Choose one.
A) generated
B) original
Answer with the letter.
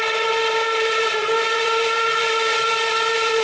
A